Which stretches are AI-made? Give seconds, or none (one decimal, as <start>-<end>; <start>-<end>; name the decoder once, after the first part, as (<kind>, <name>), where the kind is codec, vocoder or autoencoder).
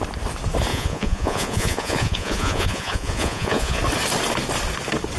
0.7-3.8 (vocoder, Vocos)